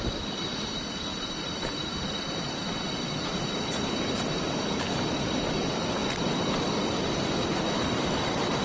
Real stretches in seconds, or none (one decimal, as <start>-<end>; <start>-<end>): 0.0-1.1; 4.3-8.6